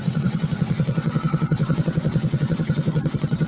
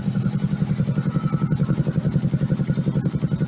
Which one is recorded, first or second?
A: second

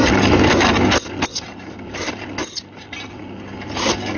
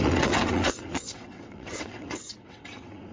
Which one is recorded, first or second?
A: first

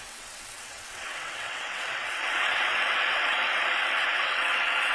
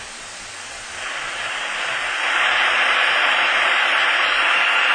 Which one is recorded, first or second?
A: second